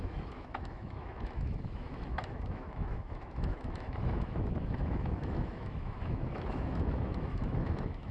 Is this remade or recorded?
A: remade